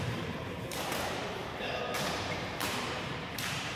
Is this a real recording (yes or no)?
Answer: no